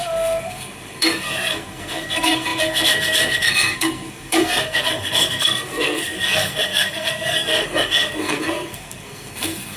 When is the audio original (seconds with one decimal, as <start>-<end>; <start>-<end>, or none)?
none